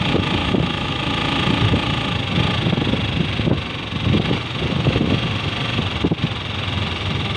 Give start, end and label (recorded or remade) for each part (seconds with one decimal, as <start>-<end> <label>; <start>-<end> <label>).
0.0-0.4 recorded; 0.4-1.0 remade; 1.0-7.4 recorded